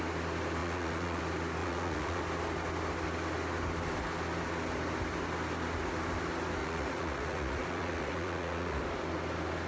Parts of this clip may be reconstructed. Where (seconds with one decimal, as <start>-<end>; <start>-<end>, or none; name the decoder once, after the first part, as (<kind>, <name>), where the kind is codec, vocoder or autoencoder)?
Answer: 0.6-1.2 (vocoder, Vocos); 1.6-2.2; 6.6-8.8